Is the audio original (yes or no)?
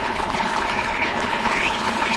no